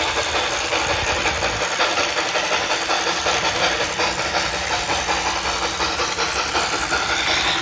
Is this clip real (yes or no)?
yes